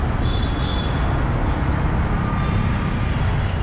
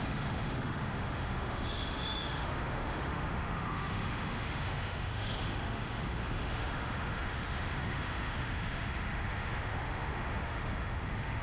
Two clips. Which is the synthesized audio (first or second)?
second